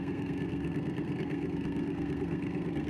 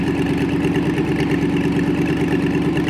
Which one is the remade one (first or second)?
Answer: first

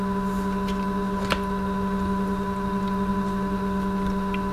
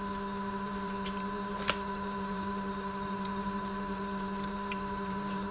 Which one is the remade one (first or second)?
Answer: second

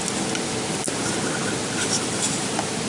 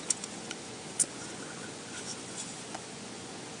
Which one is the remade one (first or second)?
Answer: second